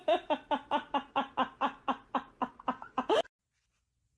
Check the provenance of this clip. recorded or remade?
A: recorded